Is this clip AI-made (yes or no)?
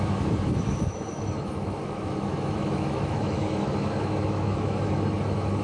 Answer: yes